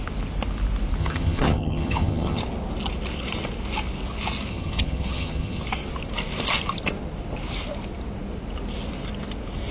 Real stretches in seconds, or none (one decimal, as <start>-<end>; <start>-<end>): 0.0-1.0; 2.4-4.5; 5.6-9.7